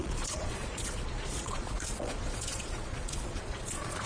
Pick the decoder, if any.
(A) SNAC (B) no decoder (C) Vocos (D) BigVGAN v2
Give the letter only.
C